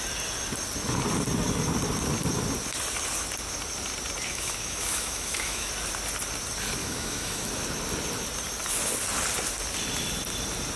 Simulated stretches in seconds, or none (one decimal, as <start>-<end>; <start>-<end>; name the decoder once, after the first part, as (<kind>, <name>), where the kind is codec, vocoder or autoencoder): 4.3-5.7 (autoencoder, DAC-VAE); 6.8-7.5